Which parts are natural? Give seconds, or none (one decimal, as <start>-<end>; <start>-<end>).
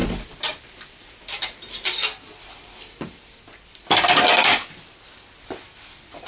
none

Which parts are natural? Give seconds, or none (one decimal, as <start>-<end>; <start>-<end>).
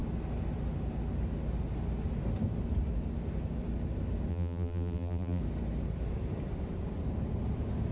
0.0-4.3; 5.4-7.9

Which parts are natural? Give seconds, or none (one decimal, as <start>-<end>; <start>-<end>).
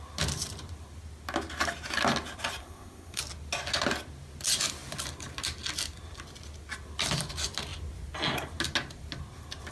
0.0-2.6; 3.2-9.7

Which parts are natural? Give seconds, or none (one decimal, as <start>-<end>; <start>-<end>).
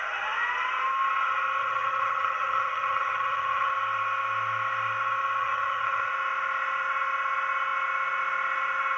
0.0-1.6; 3.7-5.4; 6.1-9.0